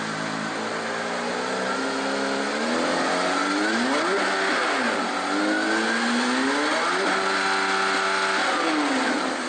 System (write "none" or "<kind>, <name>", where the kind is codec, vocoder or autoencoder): none